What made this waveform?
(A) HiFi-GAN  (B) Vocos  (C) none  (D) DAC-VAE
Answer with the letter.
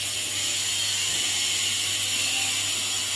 C